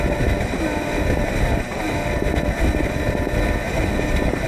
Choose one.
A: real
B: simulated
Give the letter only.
A